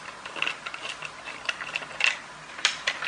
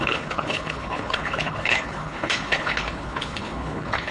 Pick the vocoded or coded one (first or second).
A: second